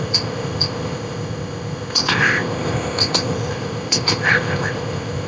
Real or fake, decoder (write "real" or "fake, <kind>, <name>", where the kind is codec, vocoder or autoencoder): fake, codec, ZipCodec